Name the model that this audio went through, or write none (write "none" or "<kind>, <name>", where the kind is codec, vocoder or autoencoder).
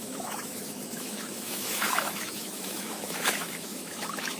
autoencoder, DAC-VAE